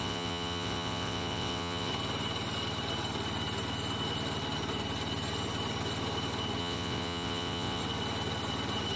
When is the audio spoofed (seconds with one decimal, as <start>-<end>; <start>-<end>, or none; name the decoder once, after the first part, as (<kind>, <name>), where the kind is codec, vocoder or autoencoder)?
0.0-1.9 (vocoder, WaveNeXt); 6.6-7.8

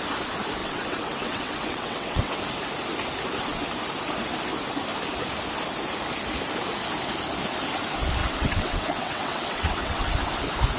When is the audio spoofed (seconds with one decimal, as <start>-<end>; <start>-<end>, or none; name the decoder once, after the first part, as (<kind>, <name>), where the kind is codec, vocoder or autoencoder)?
0.6-2.4 (vocoder, WaveNeXt); 8.2-10.1

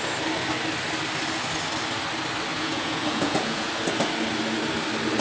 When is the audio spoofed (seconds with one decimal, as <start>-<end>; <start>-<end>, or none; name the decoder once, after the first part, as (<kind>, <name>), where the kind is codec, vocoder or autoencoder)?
2.5-3.7 (vocoder, Vocos)

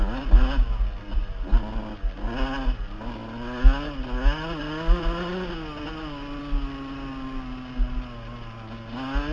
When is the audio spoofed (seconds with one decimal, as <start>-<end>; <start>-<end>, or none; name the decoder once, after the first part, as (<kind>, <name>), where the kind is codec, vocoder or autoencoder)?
none

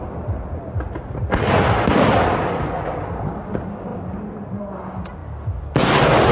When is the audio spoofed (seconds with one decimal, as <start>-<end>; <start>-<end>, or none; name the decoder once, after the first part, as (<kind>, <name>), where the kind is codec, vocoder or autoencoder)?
none